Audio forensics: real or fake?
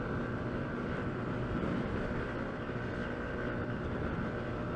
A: real